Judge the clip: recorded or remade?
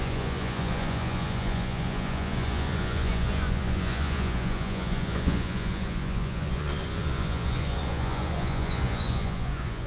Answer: remade